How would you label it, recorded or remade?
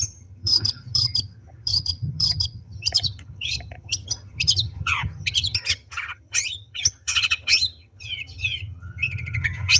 remade